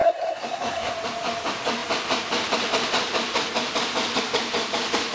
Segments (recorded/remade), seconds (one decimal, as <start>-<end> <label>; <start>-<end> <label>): 0.0-0.9 remade; 0.9-5.1 recorded